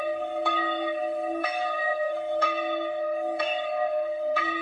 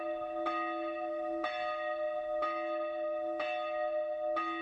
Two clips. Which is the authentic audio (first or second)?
second